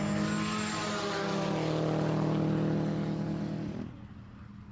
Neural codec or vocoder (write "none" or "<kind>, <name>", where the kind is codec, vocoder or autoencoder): none